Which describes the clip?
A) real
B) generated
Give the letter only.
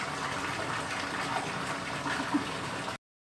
A